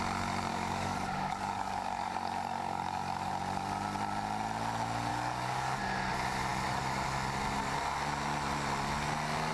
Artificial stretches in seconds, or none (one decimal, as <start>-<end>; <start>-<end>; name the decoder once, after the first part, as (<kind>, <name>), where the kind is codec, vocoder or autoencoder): 0.5-3.3 (codec, DAC); 5.1-5.8